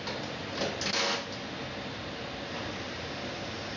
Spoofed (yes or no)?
no